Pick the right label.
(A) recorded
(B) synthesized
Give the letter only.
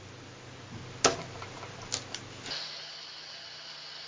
A